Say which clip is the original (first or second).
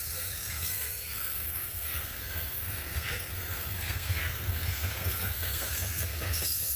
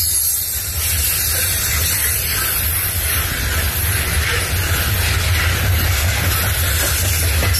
second